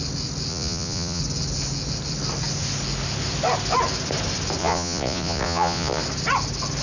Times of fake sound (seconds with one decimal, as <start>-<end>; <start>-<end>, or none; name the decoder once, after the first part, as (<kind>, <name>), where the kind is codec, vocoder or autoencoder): 0.5-1.2 (vocoder, Vocos); 4.6-6.0